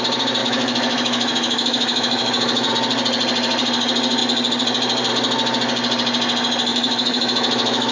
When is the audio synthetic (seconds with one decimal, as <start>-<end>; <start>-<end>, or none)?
0.4-2.7; 6.7-7.9